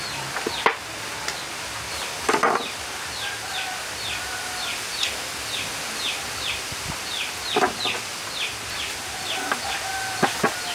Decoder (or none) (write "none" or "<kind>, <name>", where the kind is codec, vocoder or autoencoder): none